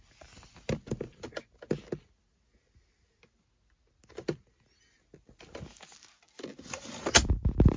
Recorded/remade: recorded